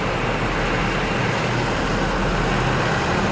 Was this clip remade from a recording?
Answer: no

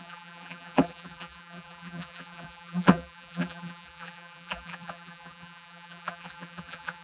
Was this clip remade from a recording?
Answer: yes